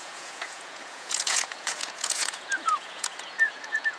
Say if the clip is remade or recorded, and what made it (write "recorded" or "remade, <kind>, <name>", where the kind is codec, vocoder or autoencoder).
remade, vocoder, Vocos